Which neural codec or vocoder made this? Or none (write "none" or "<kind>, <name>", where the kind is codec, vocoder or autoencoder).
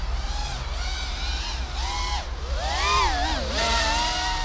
none